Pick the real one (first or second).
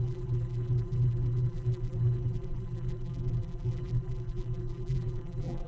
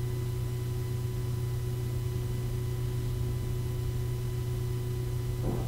second